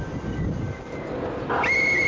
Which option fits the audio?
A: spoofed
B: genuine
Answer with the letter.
B